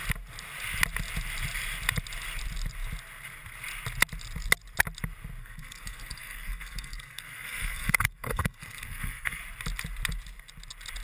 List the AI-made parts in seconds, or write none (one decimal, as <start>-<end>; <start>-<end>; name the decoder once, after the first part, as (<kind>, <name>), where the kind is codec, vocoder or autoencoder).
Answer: 5.4-9.4 (codec, SNAC)